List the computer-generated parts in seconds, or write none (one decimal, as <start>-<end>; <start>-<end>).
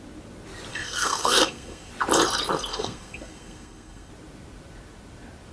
0.7-1.9; 2.7-4.1